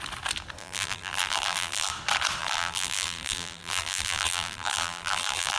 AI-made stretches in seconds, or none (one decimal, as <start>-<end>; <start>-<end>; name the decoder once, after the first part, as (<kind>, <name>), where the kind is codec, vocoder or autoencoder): 0.6-1.9 (vocoder, BigVGAN v2); 2.4-5.6